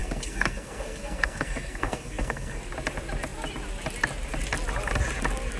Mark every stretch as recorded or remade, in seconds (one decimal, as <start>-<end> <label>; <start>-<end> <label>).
0.0-2.6 remade; 2.6-5.6 recorded